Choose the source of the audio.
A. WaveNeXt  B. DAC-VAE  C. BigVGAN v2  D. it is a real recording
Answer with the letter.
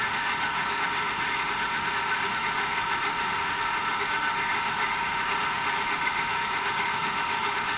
B